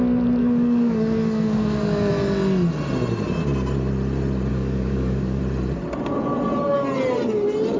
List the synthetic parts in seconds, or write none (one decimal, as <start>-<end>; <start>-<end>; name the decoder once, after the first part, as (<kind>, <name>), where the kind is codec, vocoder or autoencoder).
0.4-2.1 (codec, DAC); 4.5-5.4